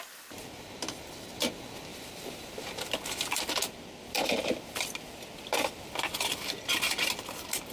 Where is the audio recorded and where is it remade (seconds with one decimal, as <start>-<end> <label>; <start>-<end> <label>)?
0.0-1.9 recorded; 1.9-6.5 remade; 6.5-7.7 recorded